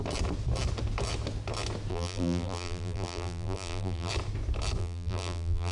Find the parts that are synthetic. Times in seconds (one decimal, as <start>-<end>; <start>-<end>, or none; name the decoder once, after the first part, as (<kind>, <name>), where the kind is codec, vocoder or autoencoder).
1.9-4.1 (vocoder, BigVGAN v2); 4.8-5.7